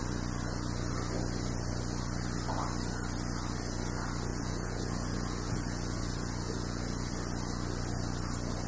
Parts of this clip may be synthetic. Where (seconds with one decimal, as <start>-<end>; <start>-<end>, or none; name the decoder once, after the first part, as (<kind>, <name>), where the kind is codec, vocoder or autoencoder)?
4.3-7.1 (vocoder, Vocos)